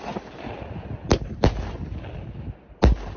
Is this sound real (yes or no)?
yes